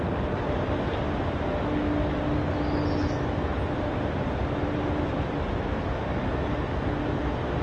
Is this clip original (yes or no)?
yes